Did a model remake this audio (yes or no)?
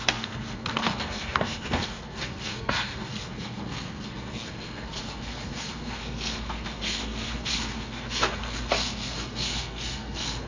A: yes